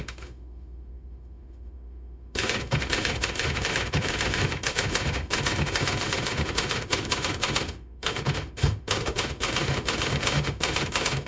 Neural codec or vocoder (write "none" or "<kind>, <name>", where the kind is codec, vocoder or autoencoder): autoencoder, DAC-VAE